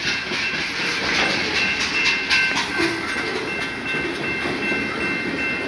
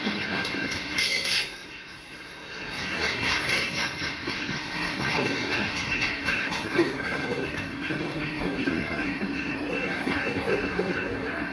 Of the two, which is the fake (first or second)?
second